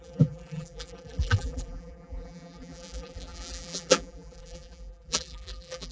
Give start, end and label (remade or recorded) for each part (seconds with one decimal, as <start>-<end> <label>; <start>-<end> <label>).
0.0-5.9 remade